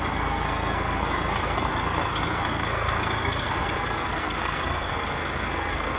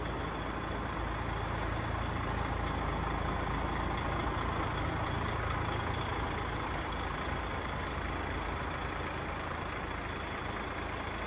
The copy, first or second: first